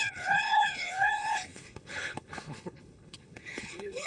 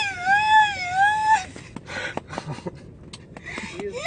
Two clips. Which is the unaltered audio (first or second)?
second